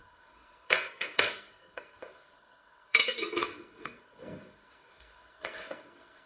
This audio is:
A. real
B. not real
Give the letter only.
B